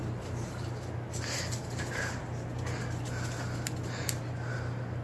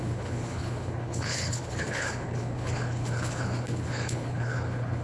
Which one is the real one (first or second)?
first